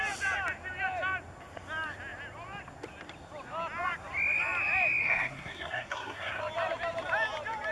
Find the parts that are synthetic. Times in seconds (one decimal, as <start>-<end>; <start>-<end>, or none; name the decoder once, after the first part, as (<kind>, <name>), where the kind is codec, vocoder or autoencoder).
5.0-6.4 (codec, SNAC)